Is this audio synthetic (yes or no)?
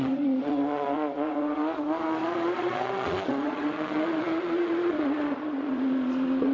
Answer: yes